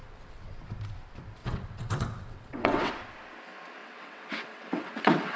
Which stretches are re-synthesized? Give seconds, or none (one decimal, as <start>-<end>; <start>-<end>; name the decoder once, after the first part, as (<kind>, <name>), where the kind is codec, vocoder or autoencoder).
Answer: 0.0-0.6 (vocoder, WaveNeXt); 1.4-2.9; 3.8-5.4